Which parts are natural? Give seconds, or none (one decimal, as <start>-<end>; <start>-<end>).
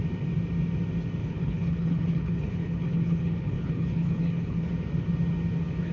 0.0-1.2; 4.7-5.9